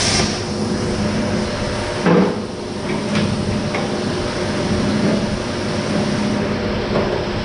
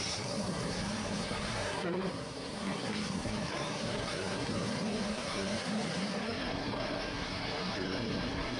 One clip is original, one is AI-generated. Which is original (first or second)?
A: first